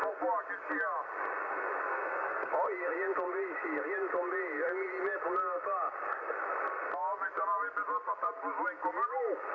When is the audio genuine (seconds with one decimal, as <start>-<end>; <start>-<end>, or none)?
0.0-1.9; 2.5-9.5